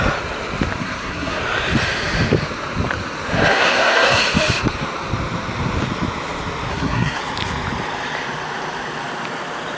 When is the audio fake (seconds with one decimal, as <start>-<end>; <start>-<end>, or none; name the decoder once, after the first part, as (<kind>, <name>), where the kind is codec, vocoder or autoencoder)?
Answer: 0.8-1.4 (codec, SNAC); 3.5-4.2; 6.7-7.2